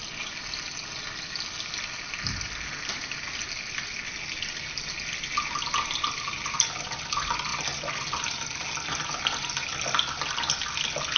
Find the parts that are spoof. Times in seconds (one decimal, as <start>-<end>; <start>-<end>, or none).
none